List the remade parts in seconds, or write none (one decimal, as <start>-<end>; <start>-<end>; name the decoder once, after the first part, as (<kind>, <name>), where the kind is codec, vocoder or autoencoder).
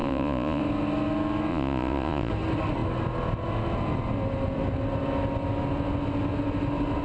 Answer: 0.0-0.6 (vocoder, Vocos); 1.5-2.3